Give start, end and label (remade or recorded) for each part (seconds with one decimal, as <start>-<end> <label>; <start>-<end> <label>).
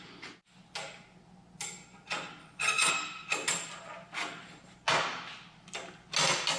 0.0-2.4 recorded; 2.4-2.9 remade; 2.9-6.6 recorded